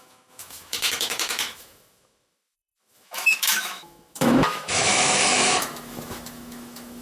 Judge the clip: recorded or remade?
remade